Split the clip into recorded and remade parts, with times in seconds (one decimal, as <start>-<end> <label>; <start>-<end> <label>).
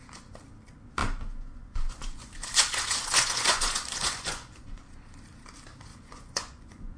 0.0-1.0 recorded; 1.0-4.8 remade; 4.8-5.9 recorded; 5.9-7.0 remade